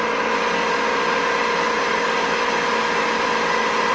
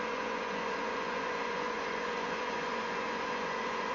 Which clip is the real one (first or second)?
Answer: first